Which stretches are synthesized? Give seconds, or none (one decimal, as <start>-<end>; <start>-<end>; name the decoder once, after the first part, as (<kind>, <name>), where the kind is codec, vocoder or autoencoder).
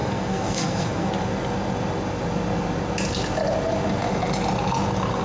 0.0-1.1 (codec, SNAC)